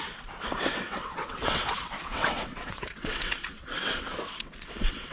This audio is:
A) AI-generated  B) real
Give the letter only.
A